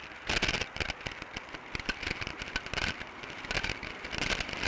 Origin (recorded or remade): recorded